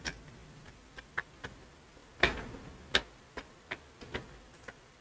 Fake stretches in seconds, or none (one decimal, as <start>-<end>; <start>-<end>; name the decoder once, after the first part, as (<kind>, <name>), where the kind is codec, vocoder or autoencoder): none